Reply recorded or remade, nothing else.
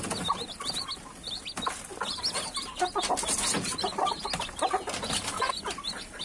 recorded